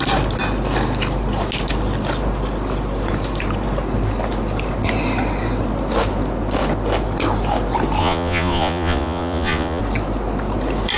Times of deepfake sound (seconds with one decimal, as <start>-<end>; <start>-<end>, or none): 8.0-9.8